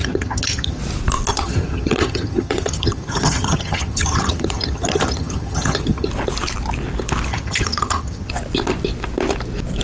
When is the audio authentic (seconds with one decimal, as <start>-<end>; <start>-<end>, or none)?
0.8-1.3; 6.1-7.3; 8.3-9.8